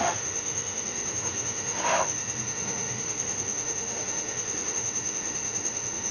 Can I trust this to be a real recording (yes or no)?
no